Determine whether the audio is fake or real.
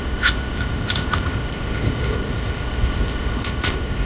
fake